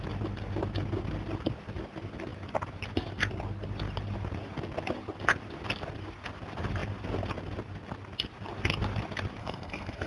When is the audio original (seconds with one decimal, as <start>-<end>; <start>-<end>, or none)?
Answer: 0.0-9.4